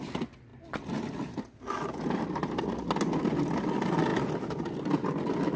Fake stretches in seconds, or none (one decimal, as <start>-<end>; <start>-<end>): none